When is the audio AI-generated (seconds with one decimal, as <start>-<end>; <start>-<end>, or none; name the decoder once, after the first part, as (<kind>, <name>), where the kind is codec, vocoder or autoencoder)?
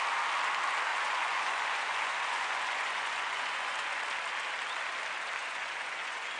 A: 0.9-4.0 (vocoder, Vocos); 5.4-6.4